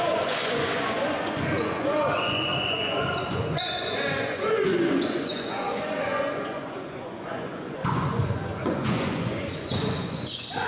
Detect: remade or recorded remade